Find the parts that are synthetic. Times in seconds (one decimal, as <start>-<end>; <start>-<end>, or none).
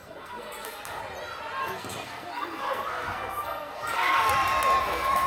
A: 0.0-1.0; 1.6-4.3; 4.8-5.3